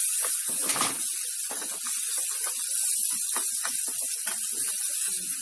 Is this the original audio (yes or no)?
yes